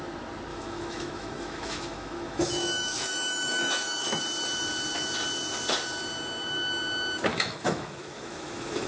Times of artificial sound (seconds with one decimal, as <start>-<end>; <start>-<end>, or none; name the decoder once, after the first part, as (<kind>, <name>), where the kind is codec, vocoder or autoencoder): 0.5-4.2 (autoencoder, DAC-VAE); 7.3-8.9